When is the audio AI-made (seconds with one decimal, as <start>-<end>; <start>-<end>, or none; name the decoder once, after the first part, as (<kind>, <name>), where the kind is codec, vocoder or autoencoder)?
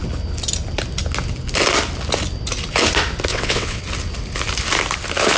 3.3-3.8 (vocoder, WaveNeXt)